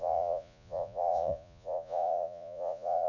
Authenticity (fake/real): fake